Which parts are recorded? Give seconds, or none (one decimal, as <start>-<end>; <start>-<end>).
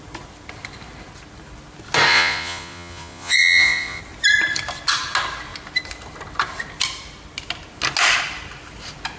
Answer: 0.0-2.1; 4.0-9.2